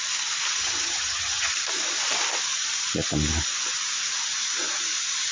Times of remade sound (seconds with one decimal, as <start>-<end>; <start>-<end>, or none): 0.6-1.5